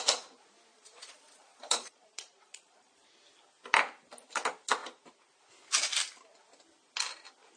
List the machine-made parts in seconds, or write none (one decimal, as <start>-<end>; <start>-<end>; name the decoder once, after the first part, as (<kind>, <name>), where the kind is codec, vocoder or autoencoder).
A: 0.7-3.1 (vocoder, Vocos)